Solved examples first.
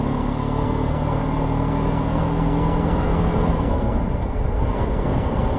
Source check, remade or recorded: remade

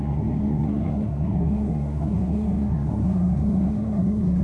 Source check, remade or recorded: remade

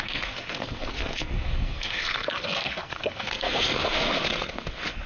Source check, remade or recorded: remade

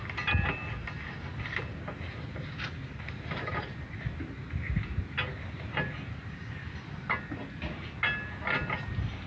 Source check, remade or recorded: recorded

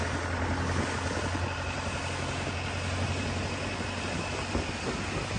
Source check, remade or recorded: recorded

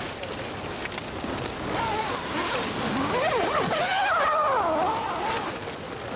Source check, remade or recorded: recorded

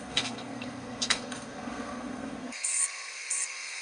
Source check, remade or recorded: remade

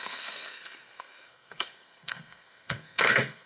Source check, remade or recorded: remade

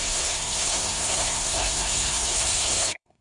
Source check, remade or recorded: remade